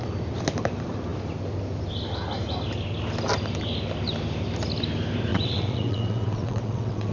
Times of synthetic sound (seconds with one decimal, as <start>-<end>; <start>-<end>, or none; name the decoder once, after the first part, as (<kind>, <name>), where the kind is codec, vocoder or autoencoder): 5.3-7.1 (vocoder, WaveNeXt)